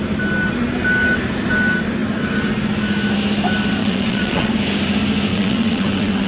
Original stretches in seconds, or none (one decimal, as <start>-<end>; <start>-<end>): 0.0-3.8; 4.5-5.3